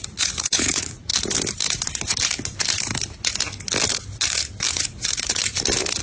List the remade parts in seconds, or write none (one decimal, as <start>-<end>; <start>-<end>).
0.0-1.1; 4.7-5.4